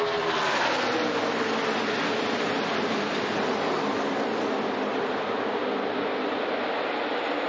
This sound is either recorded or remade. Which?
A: recorded